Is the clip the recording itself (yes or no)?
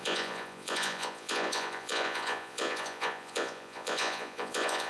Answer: no